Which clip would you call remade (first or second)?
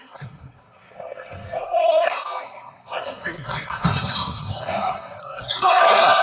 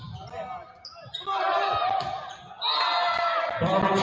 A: first